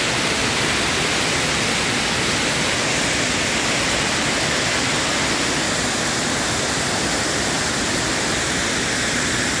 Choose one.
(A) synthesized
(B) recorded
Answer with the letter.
B